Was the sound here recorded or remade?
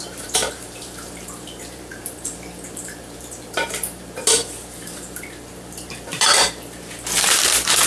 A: remade